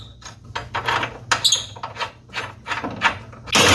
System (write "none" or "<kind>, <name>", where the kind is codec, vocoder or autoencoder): none